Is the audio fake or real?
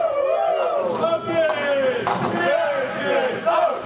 real